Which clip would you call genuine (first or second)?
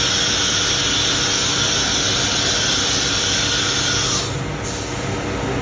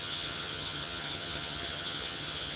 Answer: first